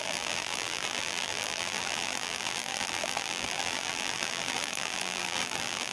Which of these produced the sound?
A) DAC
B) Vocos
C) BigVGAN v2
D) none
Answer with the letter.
C